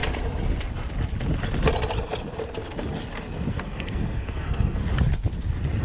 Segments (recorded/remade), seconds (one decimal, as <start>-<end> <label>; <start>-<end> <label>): 0.0-3.5 recorded; 3.5-4.8 remade; 4.8-5.8 recorded